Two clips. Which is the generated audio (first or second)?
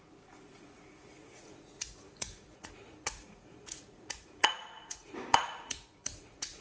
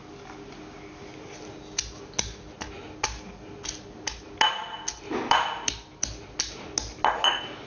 first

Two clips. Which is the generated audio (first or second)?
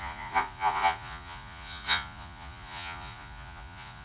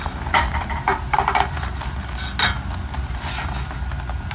first